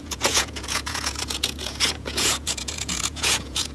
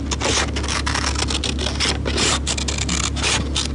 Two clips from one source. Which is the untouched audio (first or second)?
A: second